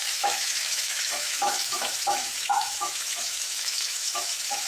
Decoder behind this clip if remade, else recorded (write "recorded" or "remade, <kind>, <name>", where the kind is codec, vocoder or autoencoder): remade, autoencoder, DAC-VAE